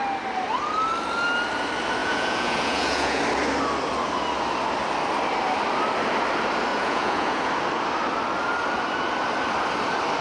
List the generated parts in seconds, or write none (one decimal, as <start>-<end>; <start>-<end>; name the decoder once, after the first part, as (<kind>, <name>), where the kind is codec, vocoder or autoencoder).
2.0-3.2 (vocoder, Vocos); 6.7-7.5